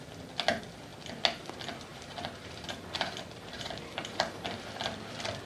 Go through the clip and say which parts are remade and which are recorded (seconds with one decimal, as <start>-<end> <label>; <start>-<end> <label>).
0.0-1.9 recorded; 1.9-4.7 remade; 4.7-5.5 recorded